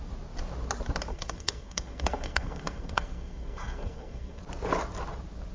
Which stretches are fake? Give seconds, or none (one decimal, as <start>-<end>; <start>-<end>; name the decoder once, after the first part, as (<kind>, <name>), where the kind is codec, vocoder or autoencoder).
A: 1.1-4.4 (codec, SNAC)